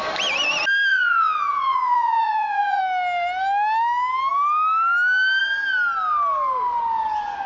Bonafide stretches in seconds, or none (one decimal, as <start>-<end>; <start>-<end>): 0.0-0.9; 2.8-7.5

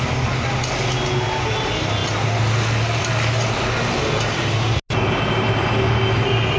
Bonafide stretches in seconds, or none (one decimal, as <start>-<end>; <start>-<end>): 0.0-6.6

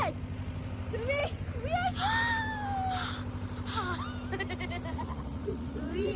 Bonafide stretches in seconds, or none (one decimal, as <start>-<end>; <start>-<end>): 0.0-4.9

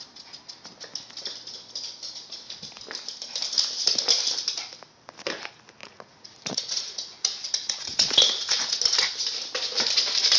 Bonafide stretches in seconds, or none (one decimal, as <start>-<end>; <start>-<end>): 0.0-5.8; 8.8-10.4

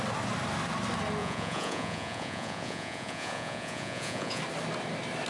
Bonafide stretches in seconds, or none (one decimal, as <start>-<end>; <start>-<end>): 0.0-1.2; 4.4-5.3

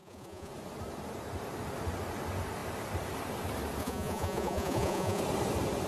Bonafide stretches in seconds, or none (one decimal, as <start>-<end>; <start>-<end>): 0.5-3.8; 5.2-5.9